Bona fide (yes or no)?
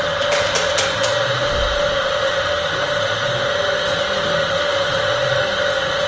yes